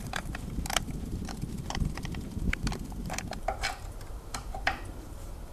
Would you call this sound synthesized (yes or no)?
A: yes